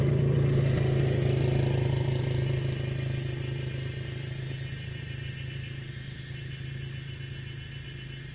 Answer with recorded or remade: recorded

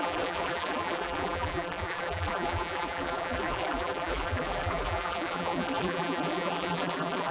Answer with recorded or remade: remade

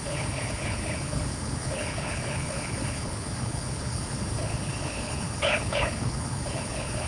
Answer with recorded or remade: remade